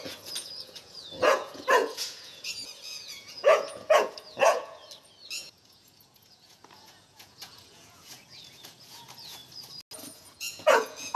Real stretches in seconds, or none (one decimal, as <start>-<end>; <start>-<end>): 4.8-5.4; 9.4-10.1